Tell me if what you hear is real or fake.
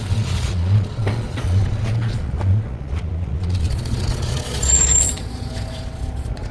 fake